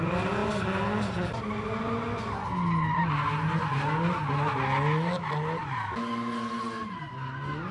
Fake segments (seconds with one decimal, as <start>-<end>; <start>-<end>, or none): none